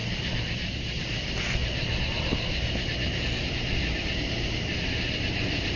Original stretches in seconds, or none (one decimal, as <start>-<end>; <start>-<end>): 0.0-5.8